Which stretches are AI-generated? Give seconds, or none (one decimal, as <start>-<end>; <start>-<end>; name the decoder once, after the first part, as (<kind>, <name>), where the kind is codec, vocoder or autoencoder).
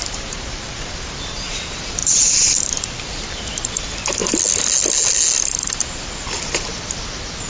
0.0-0.9 (vocoder, BigVGAN v2); 2.0-3.3